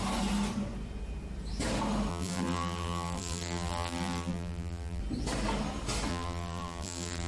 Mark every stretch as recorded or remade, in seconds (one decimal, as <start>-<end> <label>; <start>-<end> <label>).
0.0-2.1 recorded; 2.1-5.0 remade; 5.0-6.1 recorded; 6.1-7.3 remade